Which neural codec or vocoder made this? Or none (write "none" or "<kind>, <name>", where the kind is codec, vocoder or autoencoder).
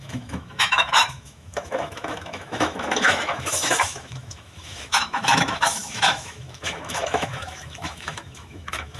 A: autoencoder, DAC-VAE